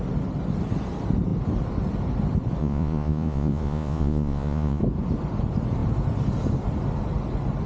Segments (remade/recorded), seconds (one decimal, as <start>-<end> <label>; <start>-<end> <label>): 0.0-2.6 recorded; 2.6-4.8 remade; 4.8-7.7 recorded